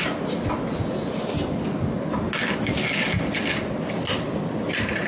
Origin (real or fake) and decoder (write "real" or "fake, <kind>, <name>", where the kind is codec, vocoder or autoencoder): real